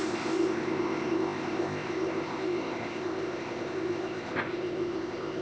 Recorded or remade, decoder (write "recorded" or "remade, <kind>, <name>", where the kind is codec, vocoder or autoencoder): remade, codec, ZipCodec